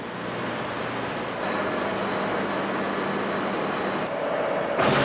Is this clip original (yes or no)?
yes